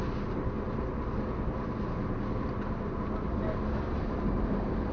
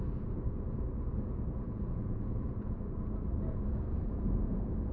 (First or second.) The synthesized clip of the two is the second